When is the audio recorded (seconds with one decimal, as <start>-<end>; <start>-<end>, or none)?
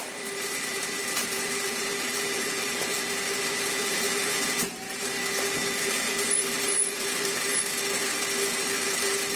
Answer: 7.5-8.5